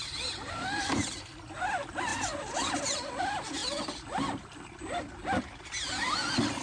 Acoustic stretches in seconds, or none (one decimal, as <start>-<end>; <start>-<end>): 0.0-6.6